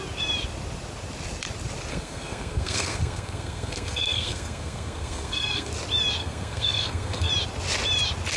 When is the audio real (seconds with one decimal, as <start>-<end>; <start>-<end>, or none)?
0.0-1.9; 5.7-6.2; 7.3-8.4